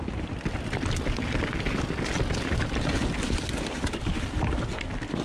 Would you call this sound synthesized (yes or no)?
no